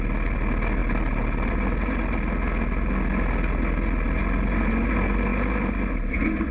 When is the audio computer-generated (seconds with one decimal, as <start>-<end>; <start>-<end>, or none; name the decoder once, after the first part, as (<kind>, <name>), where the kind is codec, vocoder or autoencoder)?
none